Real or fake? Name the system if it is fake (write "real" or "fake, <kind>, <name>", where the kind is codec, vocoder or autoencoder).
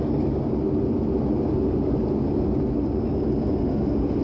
real